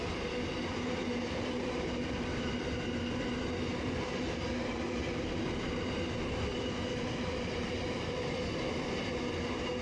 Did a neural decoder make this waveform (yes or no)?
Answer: no